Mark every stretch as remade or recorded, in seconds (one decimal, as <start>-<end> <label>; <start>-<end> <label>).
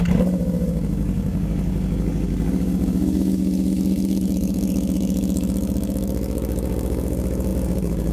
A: 0.0-8.1 remade